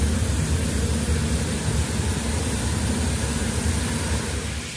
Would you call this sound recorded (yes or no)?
yes